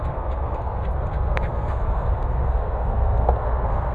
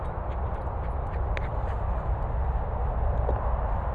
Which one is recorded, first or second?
second